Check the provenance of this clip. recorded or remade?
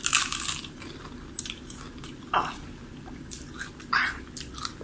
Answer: recorded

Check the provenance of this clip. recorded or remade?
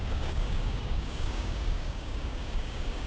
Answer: remade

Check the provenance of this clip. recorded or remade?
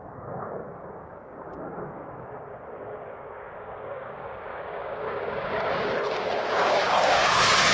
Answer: remade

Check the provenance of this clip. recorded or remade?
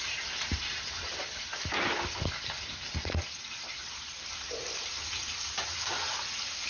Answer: recorded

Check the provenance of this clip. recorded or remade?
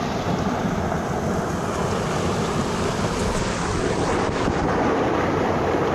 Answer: recorded